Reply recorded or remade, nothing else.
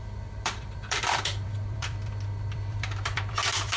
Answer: remade